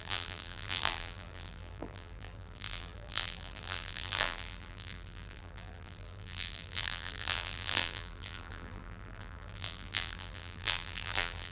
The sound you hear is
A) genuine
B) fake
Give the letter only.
B